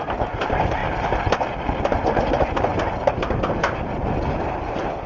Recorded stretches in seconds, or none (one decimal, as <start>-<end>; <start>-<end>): 0.0-5.1